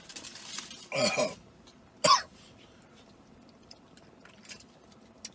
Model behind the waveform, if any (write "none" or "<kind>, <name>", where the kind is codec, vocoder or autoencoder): none